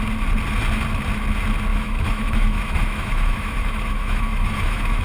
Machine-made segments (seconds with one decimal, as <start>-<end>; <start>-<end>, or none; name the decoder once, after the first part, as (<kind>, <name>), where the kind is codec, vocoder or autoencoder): 1.7-5.0 (autoencoder, DAC-VAE)